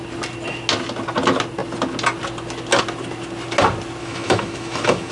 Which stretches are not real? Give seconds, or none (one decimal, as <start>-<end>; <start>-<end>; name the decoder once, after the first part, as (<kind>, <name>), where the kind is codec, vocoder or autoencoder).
4.0-5.1 (autoencoder, DAC-VAE)